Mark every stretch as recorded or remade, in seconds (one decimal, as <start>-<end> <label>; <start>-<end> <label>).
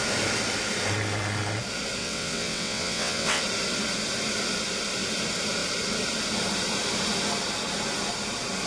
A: 0.0-2.0 recorded; 2.0-3.4 remade; 3.4-8.7 recorded